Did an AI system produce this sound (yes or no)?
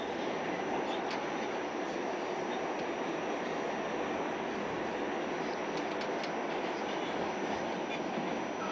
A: no